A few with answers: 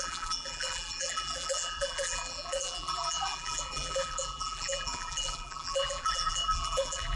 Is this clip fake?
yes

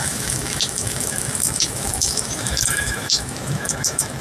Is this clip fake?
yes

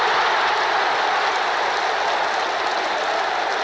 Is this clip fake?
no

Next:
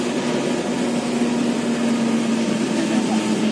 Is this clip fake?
no